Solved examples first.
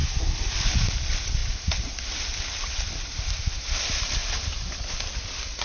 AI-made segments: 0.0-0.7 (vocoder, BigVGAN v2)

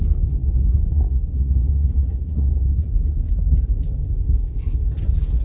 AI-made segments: 0.4-2.9 (vocoder, Vocos)

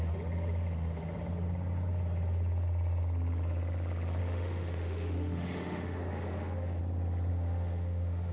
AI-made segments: 4.2-6.8 (autoencoder, DAC-VAE); 7.3-8.3

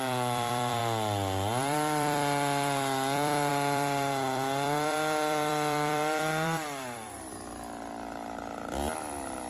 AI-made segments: 0.0-9.5 (vocoder, BigVGAN v2)

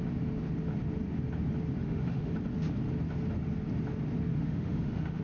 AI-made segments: 1.8-2.3 (autoencoder, DAC-VAE); 4.3-5.2